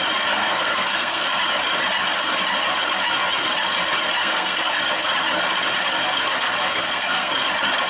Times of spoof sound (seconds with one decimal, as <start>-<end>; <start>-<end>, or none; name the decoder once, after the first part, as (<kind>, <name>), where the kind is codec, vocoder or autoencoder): 0.4-1.4 (codec, SNAC); 4.2-4.8; 6.7-7.3